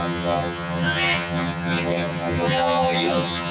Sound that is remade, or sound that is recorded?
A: remade